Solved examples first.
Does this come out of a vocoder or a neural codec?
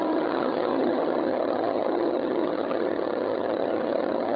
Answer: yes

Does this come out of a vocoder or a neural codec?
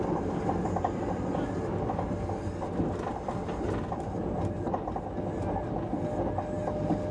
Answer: no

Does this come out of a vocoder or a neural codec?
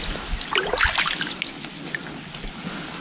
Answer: no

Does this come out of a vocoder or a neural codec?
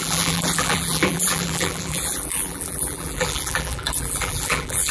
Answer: yes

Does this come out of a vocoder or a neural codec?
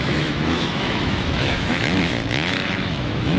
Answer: yes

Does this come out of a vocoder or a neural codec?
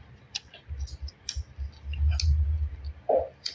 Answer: no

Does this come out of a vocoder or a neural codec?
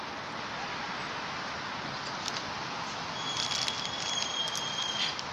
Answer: no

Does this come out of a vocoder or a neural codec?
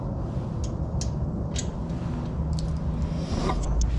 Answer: no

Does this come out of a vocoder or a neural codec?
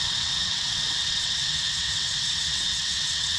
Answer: yes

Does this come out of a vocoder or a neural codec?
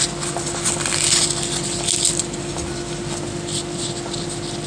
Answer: no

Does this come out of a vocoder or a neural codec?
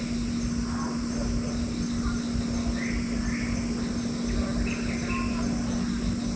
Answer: no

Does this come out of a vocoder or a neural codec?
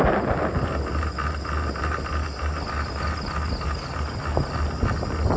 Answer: no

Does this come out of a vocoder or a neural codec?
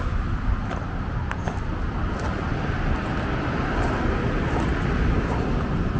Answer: no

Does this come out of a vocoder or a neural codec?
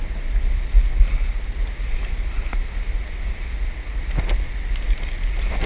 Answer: no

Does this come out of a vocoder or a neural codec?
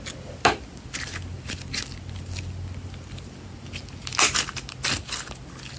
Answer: no